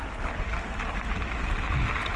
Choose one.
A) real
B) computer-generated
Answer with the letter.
A